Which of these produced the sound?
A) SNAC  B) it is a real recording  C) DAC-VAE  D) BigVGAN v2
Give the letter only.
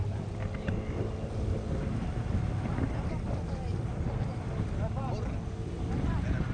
B